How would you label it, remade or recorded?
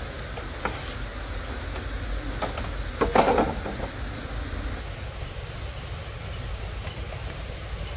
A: recorded